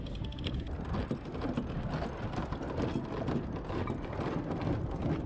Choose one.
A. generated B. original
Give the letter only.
B